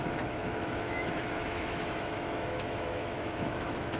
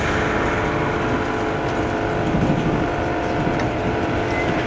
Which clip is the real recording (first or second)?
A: second